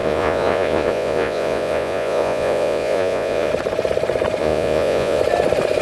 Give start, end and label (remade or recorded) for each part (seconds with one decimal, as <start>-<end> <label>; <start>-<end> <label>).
0.0-3.5 remade; 3.5-4.4 recorded; 4.4-5.2 remade; 5.2-5.8 recorded